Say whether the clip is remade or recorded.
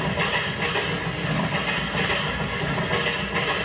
recorded